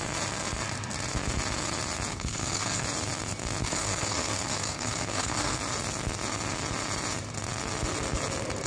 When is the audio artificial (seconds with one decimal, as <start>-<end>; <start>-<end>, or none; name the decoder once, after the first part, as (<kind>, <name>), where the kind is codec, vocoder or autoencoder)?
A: 2.1-2.8 (codec, SNAC); 3.6-5.6